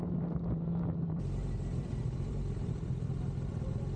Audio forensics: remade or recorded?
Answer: remade